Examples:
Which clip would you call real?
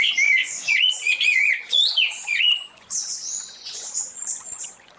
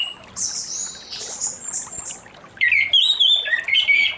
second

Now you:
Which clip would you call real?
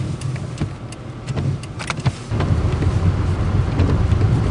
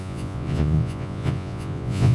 first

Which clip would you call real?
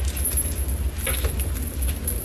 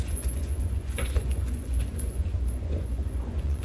first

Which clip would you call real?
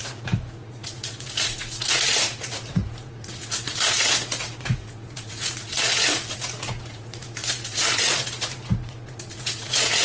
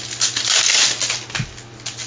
second